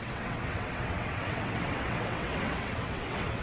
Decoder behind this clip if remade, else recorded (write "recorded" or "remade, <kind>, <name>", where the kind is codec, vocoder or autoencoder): remade, vocoder, WaveNeXt